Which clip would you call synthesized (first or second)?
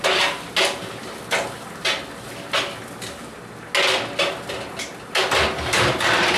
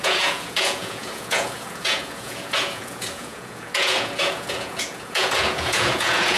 second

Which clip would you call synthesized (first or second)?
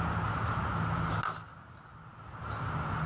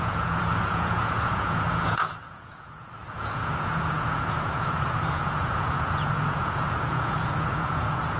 second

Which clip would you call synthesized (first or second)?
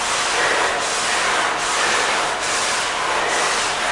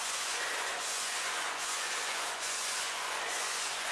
second